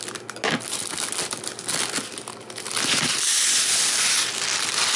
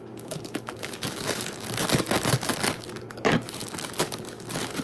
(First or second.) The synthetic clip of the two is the second